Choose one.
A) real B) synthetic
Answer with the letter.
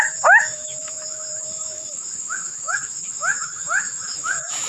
B